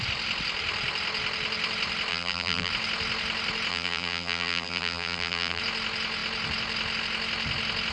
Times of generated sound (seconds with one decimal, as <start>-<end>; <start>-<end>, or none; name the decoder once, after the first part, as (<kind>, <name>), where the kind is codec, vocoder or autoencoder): 2.1-2.7 (vocoder, BigVGAN v2); 3.7-5.6